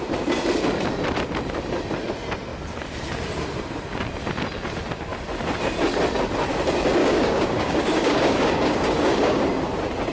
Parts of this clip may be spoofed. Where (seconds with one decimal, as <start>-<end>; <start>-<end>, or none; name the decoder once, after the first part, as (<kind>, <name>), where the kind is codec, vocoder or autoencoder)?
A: 7.0-9.4 (codec, DAC)